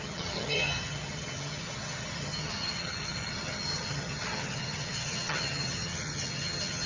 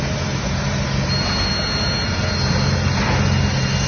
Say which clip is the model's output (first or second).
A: first